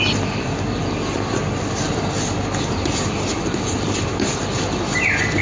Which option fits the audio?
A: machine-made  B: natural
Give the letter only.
B